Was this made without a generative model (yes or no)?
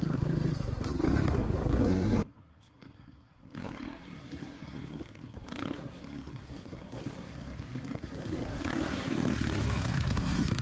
no